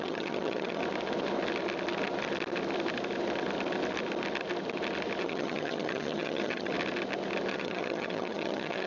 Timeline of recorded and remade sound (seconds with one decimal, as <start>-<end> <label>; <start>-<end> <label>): 0.0-0.8 remade; 0.8-5.2 recorded; 5.2-6.7 remade; 6.7-7.5 recorded; 7.5-8.9 remade